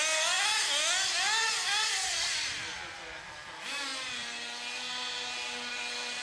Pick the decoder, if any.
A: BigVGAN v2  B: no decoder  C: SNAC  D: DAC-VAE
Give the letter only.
B